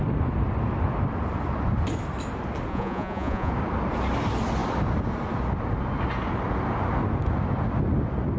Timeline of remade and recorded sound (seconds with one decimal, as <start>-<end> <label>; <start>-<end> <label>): 0.0-2.7 recorded; 2.7-3.5 remade; 3.5-8.4 recorded